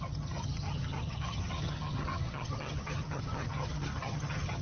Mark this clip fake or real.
fake